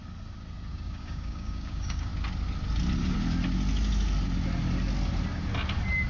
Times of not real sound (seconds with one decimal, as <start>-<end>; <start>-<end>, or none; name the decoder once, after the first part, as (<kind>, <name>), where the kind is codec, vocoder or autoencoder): 0.7-2.1 (codec, DAC)

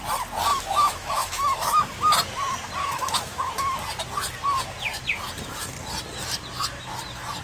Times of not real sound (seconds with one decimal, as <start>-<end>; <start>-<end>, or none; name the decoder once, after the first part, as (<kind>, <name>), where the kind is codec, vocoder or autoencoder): 0.5-1.8 (autoencoder, DAC-VAE); 2.8-3.5

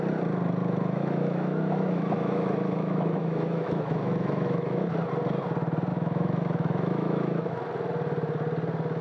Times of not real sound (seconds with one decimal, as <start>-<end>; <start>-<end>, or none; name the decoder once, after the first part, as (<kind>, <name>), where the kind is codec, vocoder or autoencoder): 0.6-4.9 (autoencoder, DAC-VAE); 5.9-7.6

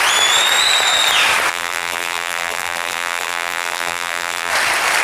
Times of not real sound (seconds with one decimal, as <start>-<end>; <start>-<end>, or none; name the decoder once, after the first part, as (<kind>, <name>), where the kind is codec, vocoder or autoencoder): 1.5-4.5 (vocoder, BigVGAN v2)

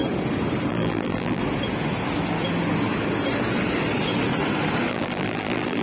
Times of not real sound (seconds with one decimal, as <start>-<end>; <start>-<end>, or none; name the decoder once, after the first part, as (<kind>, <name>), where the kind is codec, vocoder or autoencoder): 0.7-1.4 (vocoder, BigVGAN v2); 4.9-5.8

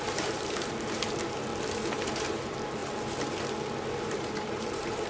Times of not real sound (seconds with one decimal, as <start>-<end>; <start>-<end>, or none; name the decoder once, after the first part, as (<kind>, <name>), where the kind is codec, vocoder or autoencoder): 0.0-1.5 (vocoder, BigVGAN v2); 2.1-2.8; 4.0-5.1